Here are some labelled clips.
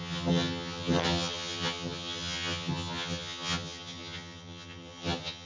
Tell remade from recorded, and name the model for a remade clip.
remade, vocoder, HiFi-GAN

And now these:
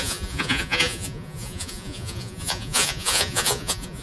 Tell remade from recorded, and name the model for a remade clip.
remade, vocoder, Vocos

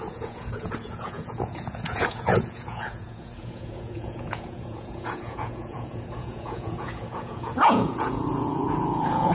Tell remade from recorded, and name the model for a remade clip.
remade, vocoder, Vocos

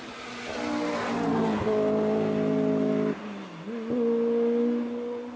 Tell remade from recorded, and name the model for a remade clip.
recorded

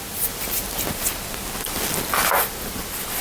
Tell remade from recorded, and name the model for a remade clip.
recorded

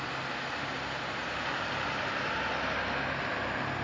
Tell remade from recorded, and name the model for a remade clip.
recorded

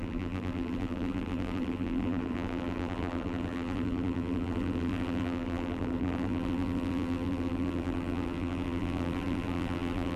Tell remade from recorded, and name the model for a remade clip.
remade, vocoder, BigVGAN v2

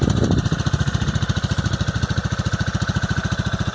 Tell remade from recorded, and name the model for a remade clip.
recorded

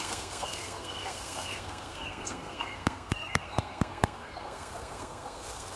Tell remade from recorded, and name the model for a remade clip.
remade, codec, SNAC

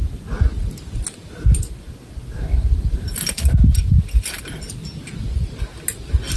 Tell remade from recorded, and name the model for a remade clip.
recorded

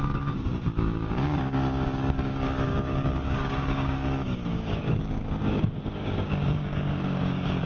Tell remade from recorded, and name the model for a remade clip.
remade, codec, DAC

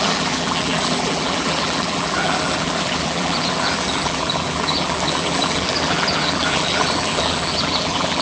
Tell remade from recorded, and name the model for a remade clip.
remade, vocoder, BigVGAN v2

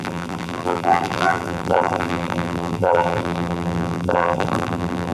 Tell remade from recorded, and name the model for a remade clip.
remade, vocoder, BigVGAN v2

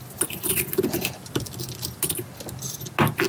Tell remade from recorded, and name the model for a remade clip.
recorded